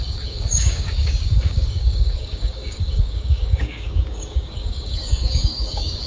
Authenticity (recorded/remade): remade